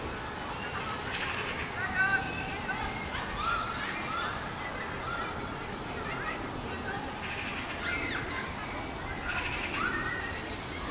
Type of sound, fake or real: real